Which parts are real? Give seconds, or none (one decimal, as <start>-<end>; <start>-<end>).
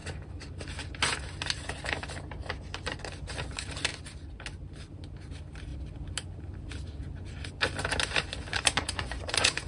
0.0-8.5